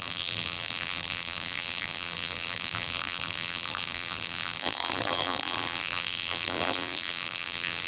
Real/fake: fake